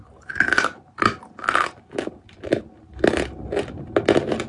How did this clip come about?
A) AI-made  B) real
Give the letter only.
B